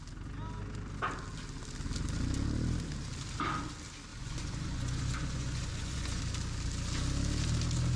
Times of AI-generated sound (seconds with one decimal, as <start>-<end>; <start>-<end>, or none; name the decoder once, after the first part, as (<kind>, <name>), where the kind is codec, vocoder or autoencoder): 4.1-6.2 (vocoder, Vocos)